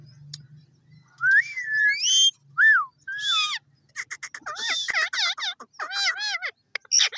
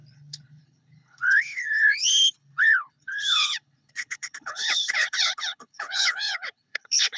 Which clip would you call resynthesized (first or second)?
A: second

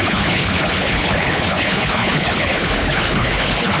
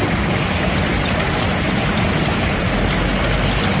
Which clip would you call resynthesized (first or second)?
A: first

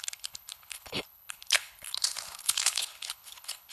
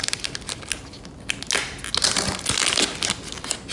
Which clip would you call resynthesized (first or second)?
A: first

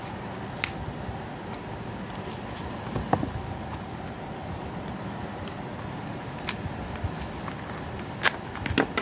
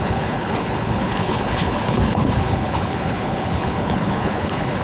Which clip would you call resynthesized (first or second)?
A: second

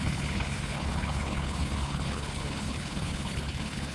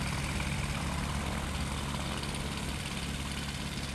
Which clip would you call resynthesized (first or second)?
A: first